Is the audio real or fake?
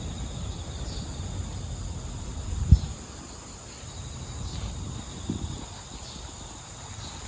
real